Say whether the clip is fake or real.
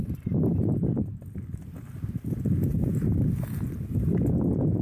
real